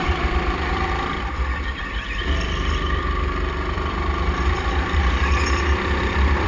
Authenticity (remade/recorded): remade